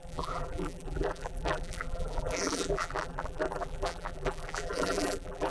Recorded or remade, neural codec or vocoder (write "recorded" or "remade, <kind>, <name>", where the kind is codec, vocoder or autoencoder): remade, vocoder, BigVGAN v2